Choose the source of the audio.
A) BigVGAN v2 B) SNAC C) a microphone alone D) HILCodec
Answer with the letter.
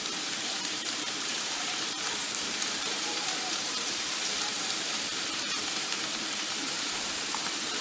A